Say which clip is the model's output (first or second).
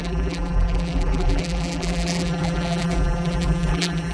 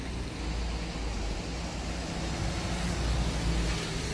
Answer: first